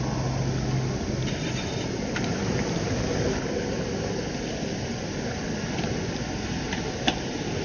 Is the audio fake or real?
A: real